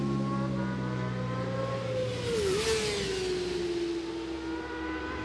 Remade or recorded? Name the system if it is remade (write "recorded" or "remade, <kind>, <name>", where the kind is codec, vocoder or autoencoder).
recorded